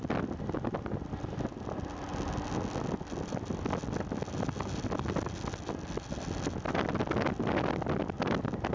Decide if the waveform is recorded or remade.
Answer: recorded